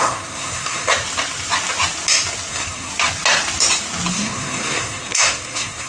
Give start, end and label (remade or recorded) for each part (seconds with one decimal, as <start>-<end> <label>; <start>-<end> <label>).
0.0-0.9 remade; 0.9-2.5 recorded; 2.5-2.9 remade; 2.9-4.1 recorded; 4.1-5.9 remade